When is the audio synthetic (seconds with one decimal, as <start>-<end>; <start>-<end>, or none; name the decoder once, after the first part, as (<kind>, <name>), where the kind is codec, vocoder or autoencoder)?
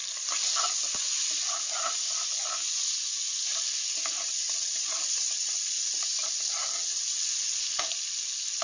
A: none